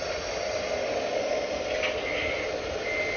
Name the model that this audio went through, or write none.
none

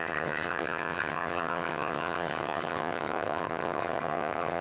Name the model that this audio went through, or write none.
vocoder, HiFi-GAN